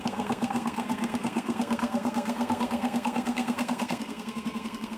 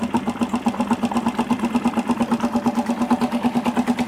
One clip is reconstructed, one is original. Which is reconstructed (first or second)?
first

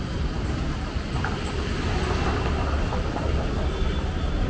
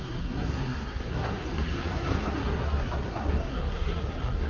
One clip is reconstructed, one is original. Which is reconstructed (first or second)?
second